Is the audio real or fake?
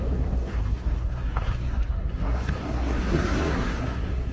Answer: fake